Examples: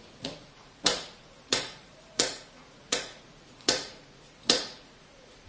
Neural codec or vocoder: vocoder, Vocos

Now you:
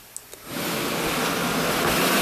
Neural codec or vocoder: none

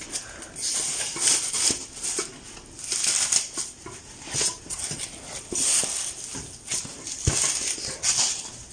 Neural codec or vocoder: none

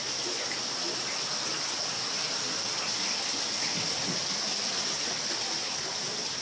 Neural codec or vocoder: none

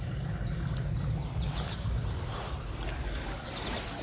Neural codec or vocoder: none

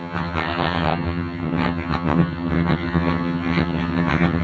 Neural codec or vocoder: vocoder, HiFi-GAN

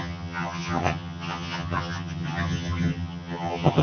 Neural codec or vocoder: vocoder, HiFi-GAN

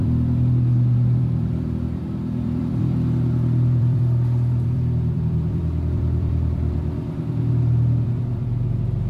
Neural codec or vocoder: vocoder, BigVGAN v2